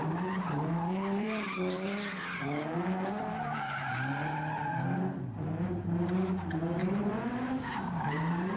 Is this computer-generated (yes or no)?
yes